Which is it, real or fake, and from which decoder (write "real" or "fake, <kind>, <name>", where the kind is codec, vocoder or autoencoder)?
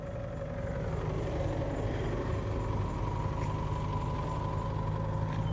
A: real